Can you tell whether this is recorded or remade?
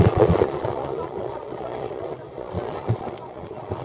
remade